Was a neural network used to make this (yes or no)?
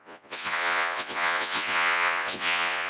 yes